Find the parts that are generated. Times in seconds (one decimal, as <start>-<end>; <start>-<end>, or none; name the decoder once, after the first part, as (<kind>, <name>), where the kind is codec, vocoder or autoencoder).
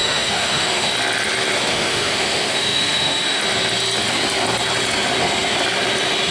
0.0-0.9 (autoencoder, DAC-VAE); 1.7-3.4